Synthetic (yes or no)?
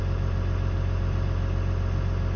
no